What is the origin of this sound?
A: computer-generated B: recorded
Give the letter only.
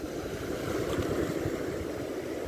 A